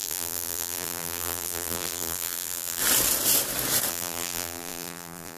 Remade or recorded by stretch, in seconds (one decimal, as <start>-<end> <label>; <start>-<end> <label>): 0.0-2.8 remade; 2.8-3.9 recorded; 3.9-5.4 remade